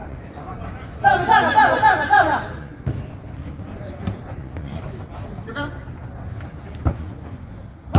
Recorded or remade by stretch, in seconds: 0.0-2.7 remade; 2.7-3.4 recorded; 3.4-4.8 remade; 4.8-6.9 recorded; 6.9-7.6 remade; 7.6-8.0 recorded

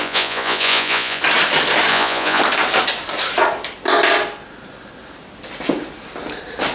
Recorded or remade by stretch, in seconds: 0.0-1.2 remade; 1.2-1.9 recorded; 1.9-2.4 remade; 2.4-6.7 recorded